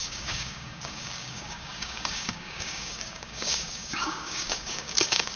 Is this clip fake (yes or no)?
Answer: yes